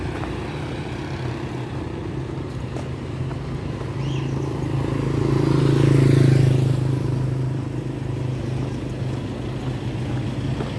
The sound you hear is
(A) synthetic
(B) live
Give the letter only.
B